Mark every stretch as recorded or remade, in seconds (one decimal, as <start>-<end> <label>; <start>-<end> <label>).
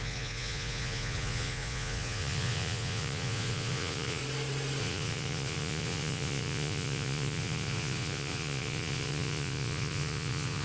0.0-4.2 remade; 4.2-4.8 recorded; 4.8-10.6 remade